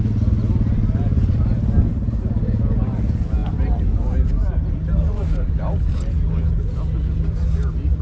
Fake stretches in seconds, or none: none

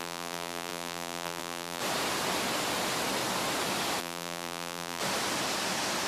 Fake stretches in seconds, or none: 0.0-1.8 (vocoder, BigVGAN v2); 4.0-5.0

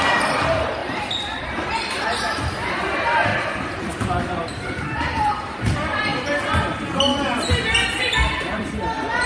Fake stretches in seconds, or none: 0.0-0.8 (vocoder, BigVGAN v2); 2.3-3.3; 3.8-6.1; 8.0-9.3

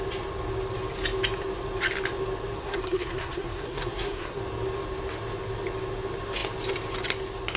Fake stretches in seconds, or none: 2.6-4.4 (codec, SNAC)

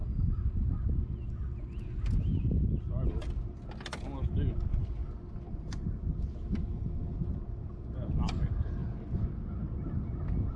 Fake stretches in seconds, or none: none